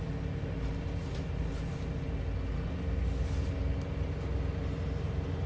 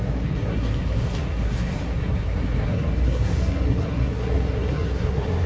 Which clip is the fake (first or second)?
second